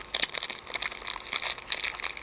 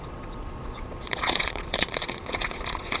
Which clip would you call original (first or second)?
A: first